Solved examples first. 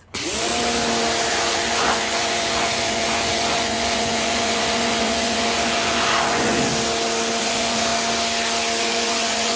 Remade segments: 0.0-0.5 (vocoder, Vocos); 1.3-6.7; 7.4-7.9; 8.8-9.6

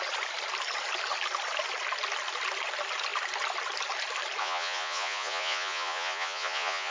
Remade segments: 4.4-6.9 (vocoder, Vocos)